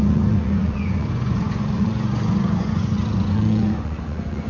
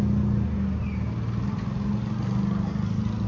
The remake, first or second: first